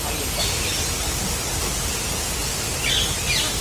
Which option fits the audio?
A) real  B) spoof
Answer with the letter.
A